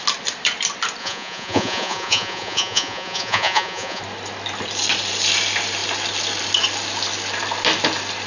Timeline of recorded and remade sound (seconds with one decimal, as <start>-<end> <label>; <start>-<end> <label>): 0.0-1.0 recorded; 1.0-4.0 remade; 4.0-8.3 recorded